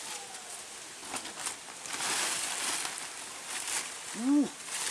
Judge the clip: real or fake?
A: real